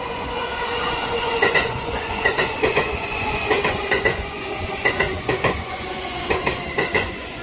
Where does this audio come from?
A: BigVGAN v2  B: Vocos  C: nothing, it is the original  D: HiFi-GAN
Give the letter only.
B